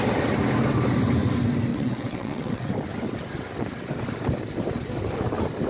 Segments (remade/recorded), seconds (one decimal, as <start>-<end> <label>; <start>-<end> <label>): 0.0-1.7 recorded; 1.7-2.7 remade; 2.7-5.7 recorded